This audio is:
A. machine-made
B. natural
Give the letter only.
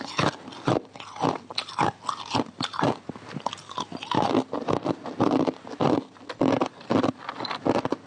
B